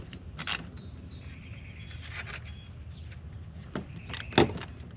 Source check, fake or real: real